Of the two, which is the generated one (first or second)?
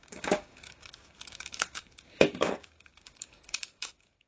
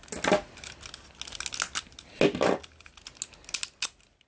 first